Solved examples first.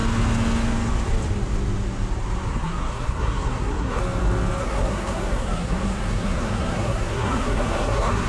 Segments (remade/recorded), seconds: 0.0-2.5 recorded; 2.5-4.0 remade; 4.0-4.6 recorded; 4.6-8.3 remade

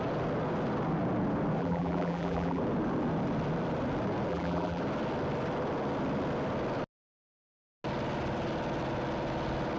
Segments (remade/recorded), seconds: 0.0-1.6 recorded; 1.6-2.6 remade; 2.6-4.3 recorded; 4.3-4.8 remade; 4.8-9.8 recorded

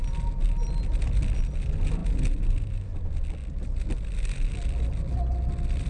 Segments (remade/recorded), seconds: 0.0-5.9 recorded